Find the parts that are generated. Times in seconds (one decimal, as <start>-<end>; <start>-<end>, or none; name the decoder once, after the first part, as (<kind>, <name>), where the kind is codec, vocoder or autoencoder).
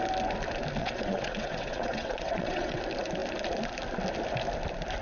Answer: 0.8-2.8 (vocoder, WaveNeXt)